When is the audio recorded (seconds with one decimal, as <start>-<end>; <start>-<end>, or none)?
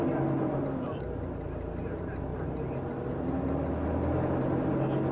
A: 0.0-5.1